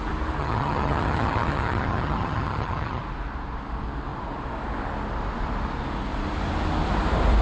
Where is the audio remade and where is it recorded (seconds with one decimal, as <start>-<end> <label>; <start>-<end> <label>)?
0.0-0.4 recorded; 0.4-3.0 remade; 3.0-7.4 recorded